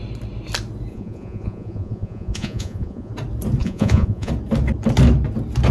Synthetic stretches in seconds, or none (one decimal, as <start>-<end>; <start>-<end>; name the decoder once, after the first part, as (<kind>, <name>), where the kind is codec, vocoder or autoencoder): 0.9-3.1 (vocoder, Vocos); 3.6-4.3